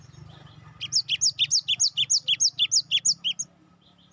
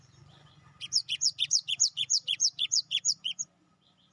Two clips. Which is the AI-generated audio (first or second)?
second